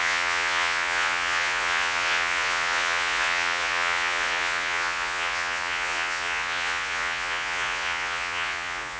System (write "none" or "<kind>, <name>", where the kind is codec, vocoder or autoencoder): vocoder, Vocos